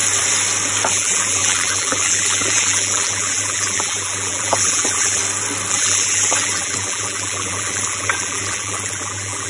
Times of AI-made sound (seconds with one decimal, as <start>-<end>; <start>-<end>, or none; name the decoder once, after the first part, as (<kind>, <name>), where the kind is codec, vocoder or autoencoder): 0.9-5.2 (vocoder, BigVGAN v2); 5.7-9.5